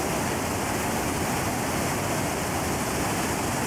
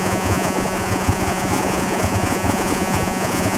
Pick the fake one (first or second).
second